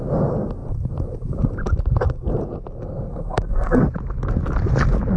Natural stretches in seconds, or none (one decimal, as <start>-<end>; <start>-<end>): 0.0-3.1; 3.8-5.2